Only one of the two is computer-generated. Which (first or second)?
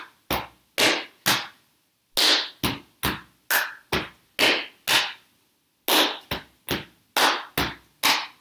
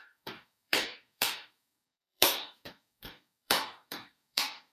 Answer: second